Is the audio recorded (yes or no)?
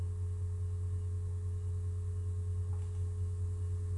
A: yes